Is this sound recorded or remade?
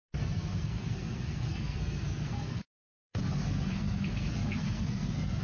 remade